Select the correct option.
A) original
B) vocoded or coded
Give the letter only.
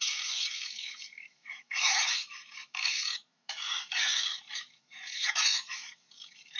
B